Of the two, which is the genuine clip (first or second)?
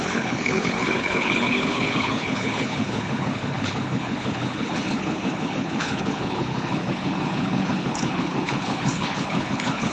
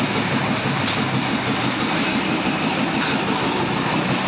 second